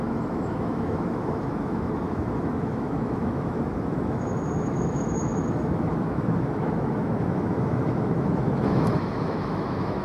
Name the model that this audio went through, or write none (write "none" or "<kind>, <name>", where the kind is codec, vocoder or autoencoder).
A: autoencoder, DAC-VAE